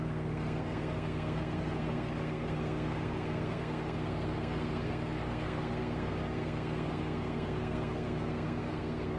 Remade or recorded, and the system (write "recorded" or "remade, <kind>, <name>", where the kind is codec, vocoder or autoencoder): remade, codec, SNAC